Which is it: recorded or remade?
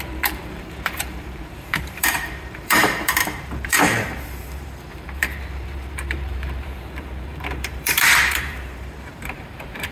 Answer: remade